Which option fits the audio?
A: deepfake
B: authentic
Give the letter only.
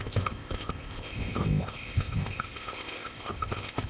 A